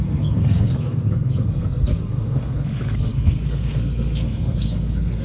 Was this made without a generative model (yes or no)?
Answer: no